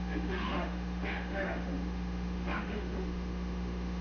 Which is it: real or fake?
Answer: fake